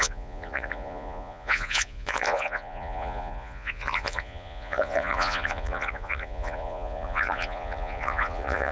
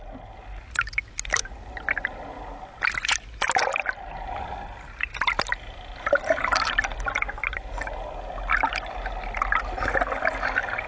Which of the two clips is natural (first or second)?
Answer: second